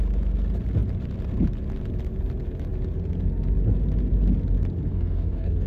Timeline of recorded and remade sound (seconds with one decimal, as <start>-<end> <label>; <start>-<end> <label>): 0.0-4.9 recorded; 4.9-5.7 remade